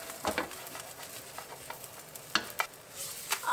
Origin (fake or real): real